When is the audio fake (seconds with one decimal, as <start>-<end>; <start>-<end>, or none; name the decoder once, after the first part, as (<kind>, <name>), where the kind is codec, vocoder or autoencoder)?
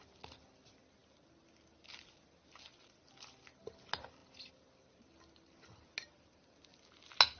none